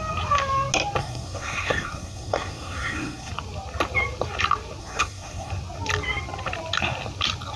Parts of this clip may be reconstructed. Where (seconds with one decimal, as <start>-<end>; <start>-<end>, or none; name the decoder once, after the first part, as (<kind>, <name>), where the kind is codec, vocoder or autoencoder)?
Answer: 1.0-3.3 (codec, SNAC); 4.8-5.5